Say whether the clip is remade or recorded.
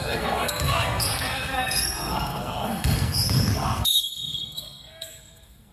remade